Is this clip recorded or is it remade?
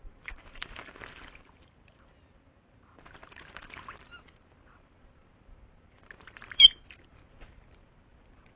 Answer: remade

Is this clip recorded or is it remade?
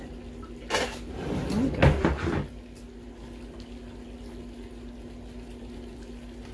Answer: recorded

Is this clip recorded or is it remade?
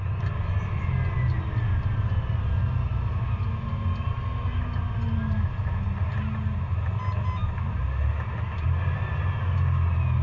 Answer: recorded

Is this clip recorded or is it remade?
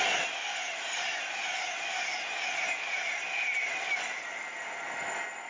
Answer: recorded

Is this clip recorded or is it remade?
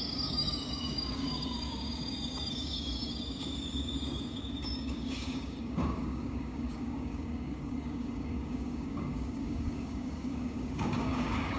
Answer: remade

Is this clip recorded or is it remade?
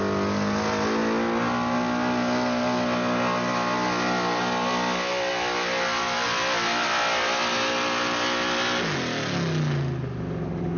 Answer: recorded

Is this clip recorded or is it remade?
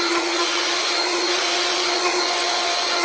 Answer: remade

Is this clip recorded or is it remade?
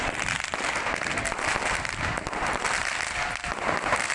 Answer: recorded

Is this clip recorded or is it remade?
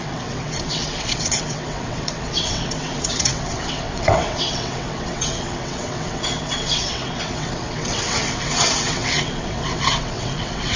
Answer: remade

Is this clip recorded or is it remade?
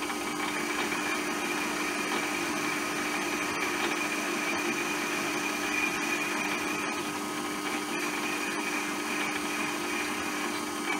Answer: recorded